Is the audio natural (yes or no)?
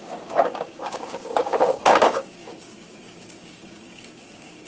no